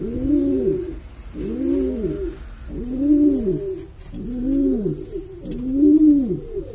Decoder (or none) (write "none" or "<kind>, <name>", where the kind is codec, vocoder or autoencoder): none